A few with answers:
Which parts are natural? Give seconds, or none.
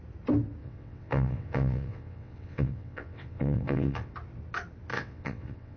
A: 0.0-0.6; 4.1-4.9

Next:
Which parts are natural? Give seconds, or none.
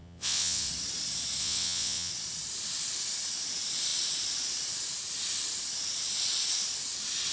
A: 0.7-1.4; 2.1-7.3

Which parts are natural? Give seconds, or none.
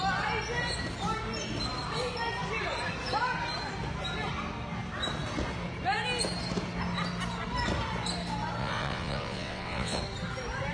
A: 0.0-8.6; 10.0-10.7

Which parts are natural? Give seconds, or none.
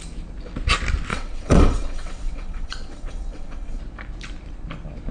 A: 0.0-1.1; 3.8-5.1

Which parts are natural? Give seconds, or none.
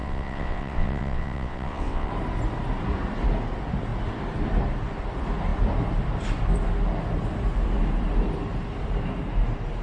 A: 2.1-9.8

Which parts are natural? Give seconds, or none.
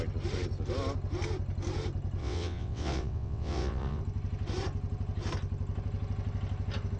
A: 0.0-2.2; 4.0-7.0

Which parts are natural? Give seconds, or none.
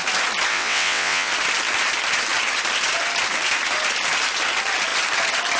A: 0.0-0.5; 1.3-5.6